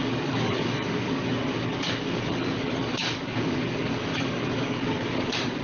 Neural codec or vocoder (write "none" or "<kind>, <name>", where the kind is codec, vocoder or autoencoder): codec, DAC